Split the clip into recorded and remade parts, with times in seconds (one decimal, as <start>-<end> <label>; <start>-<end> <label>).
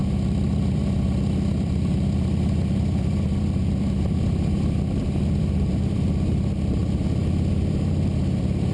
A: 0.0-6.8 remade; 6.8-7.5 recorded; 7.5-8.7 remade